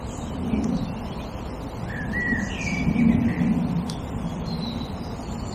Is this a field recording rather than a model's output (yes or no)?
no